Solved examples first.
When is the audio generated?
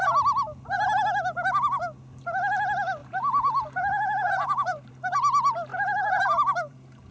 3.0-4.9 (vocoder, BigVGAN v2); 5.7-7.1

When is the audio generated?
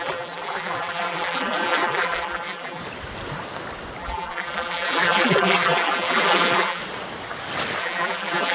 0.0-2.8 (vocoder, BigVGAN v2); 4.0-6.8; 7.8-8.5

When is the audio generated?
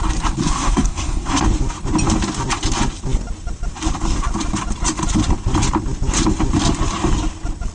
0.4-1.4 (codec, SNAC)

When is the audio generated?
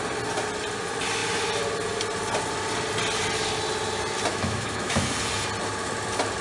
4.3-5.1 (autoencoder, DAC-VAE)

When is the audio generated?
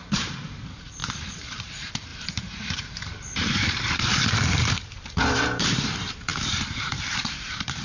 0.0-1.0 (vocoder, BigVGAN v2); 1.6-7.8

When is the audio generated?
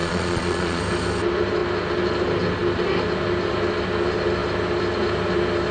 0.0-0.8 (vocoder, Vocos)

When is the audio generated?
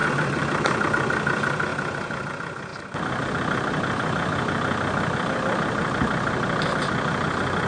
0.0-0.9 (vocoder, BigVGAN v2); 1.7-2.3; 2.7-3.3